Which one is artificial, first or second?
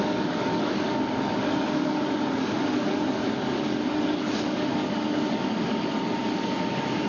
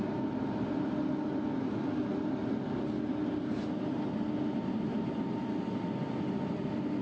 first